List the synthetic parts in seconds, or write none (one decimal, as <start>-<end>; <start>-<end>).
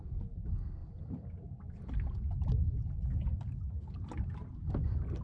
0.8-3.9